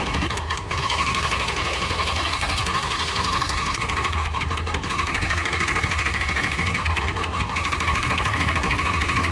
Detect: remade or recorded remade